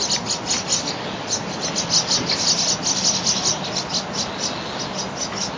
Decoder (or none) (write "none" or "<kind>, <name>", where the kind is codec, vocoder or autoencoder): none